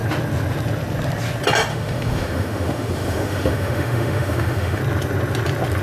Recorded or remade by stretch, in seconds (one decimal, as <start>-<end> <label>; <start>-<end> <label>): 0.0-1.7 recorded; 1.7-4.8 remade; 4.8-5.8 recorded